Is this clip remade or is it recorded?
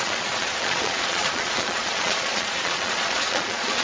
remade